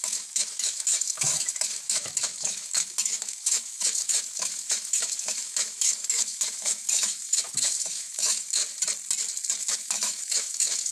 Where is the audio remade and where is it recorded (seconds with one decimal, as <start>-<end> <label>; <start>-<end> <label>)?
0.0-8.6 remade; 8.6-9.6 recorded; 9.6-10.9 remade